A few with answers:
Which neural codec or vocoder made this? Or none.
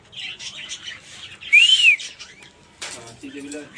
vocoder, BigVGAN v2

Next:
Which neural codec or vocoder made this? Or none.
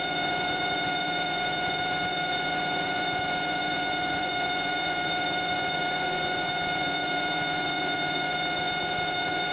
vocoder, Vocos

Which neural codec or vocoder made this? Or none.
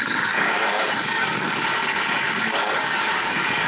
codec, DAC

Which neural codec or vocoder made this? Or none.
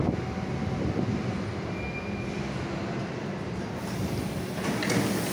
none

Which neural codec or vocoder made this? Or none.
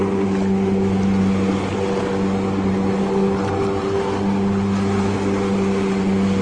none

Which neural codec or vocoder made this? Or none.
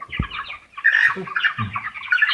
none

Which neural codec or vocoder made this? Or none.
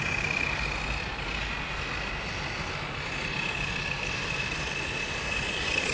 none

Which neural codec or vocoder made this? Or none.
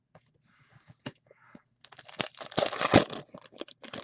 none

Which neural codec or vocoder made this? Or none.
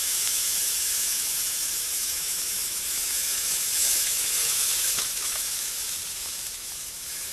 autoencoder, DAC-VAE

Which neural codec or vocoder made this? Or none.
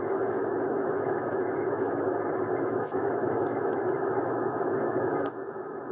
autoencoder, DAC-VAE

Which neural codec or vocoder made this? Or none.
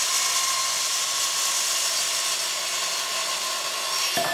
none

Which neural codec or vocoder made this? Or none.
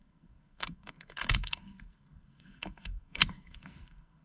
codec, SNAC